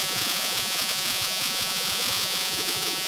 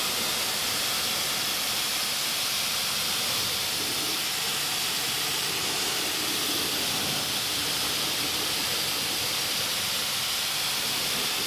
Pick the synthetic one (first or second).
first